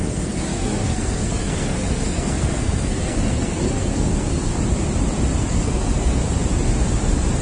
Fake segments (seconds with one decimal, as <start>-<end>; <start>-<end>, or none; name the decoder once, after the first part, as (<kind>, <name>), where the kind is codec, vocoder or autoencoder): 0.0-4.5 (codec, SNAC); 5.4-6.2